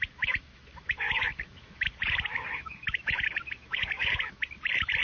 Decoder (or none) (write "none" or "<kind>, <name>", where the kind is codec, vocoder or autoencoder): autoencoder, DAC-VAE